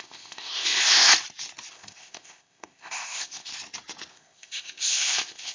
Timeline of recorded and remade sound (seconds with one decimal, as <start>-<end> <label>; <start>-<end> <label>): 0.0-1.1 remade; 1.1-1.7 recorded; 1.7-3.5 remade; 3.5-4.1 recorded; 4.1-5.5 remade